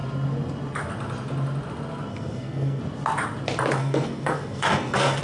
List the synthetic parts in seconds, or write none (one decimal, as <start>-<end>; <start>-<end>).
2.1-2.8; 3.8-5.2